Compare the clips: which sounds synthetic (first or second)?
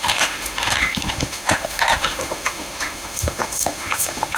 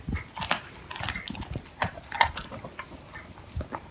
first